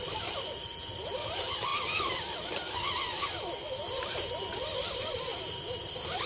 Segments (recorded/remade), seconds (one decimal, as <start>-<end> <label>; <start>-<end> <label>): 0.0-6.3 recorded